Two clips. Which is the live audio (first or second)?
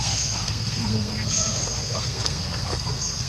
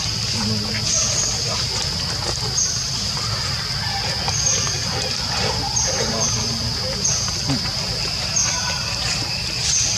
second